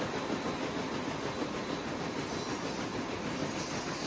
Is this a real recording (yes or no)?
yes